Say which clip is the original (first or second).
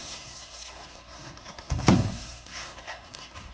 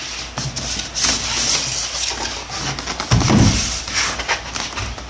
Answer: second